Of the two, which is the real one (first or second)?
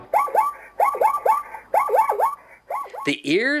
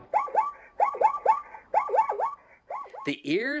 first